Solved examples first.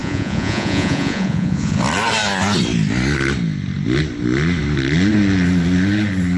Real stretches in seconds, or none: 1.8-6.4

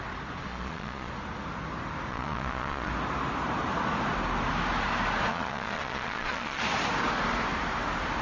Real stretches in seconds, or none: 0.0-0.5; 1.1-2.1; 2.9-5.3; 6.6-8.2

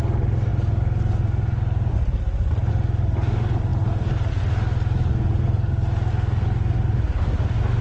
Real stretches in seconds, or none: 0.0-7.8

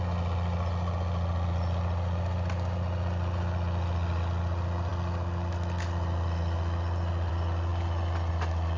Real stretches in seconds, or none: 0.0-8.8

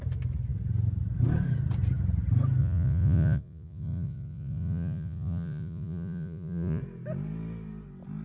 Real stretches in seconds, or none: 0.0-2.6; 6.8-8.2

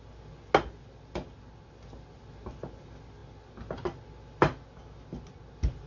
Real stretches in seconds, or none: 0.0-5.9

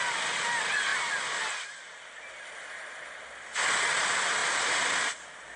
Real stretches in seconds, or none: 0.0-5.6

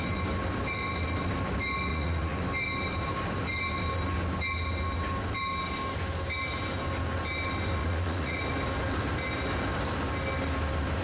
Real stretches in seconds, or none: 0.0-1.9; 2.4-7.8; 8.4-11.0